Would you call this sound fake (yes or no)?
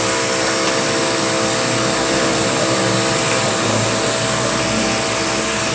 no